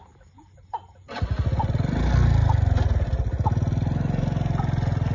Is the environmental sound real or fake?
real